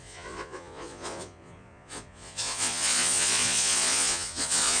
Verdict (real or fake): fake